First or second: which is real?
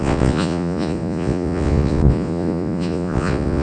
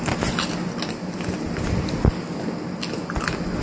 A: second